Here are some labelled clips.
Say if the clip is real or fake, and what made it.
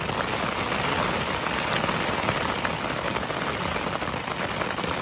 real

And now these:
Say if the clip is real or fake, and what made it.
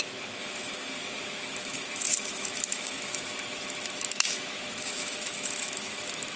fake, autoencoder, DAC-VAE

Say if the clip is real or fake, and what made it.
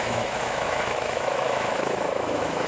fake, autoencoder, DAC-VAE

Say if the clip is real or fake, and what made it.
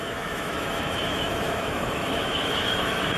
fake, autoencoder, DAC-VAE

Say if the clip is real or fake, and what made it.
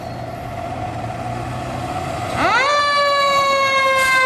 real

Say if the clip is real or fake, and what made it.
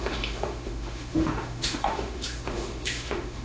fake, autoencoder, DAC-VAE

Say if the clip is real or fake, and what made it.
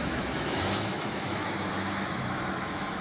fake, autoencoder, DAC-VAE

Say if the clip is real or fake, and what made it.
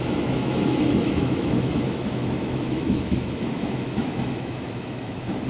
fake, autoencoder, DAC-VAE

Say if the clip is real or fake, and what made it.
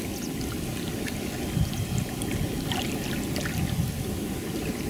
real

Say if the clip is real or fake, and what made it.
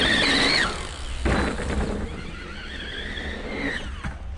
real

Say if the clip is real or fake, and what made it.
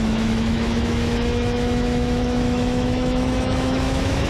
fake, autoencoder, DAC-VAE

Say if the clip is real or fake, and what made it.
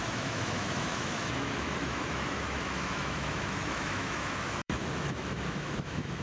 fake, autoencoder, DAC-VAE